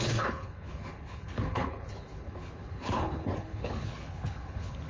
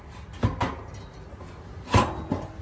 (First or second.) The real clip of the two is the second